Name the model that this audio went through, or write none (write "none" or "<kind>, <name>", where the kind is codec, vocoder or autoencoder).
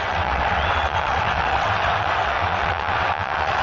vocoder, WaveNeXt